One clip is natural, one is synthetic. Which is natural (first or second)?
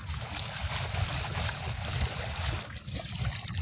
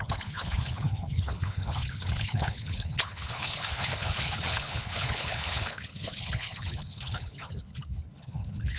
first